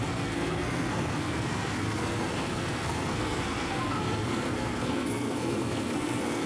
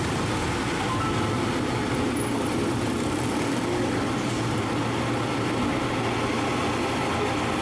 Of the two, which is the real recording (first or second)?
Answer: second